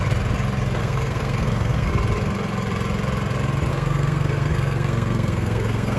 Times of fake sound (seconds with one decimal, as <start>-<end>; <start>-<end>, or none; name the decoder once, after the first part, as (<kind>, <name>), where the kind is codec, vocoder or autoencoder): 0.8-1.9 (codec, SNAC); 3.7-6.0